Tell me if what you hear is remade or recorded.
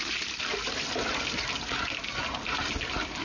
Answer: recorded